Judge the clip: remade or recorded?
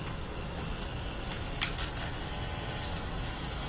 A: recorded